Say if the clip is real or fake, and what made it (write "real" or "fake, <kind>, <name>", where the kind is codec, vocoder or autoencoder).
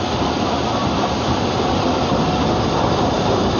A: real